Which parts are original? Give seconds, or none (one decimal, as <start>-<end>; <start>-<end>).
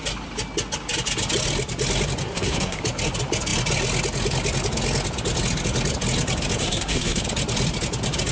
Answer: 0.0-2.2; 2.8-6.6; 7.2-8.3